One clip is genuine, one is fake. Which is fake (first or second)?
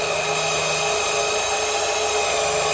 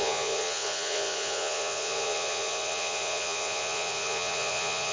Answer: second